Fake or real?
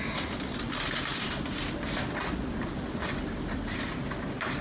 real